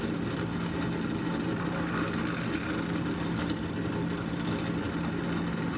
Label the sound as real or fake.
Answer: real